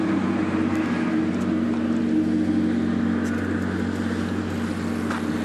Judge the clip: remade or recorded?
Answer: recorded